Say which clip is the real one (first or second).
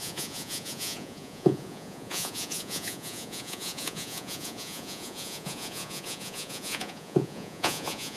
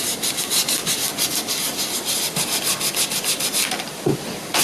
second